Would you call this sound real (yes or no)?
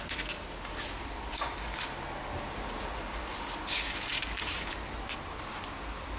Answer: yes